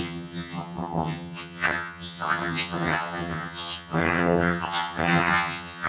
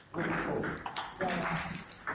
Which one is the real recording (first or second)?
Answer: second